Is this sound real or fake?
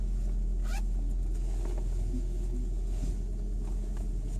real